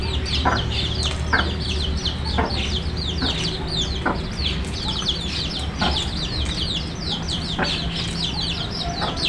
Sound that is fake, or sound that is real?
real